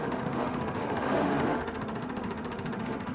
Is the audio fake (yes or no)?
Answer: yes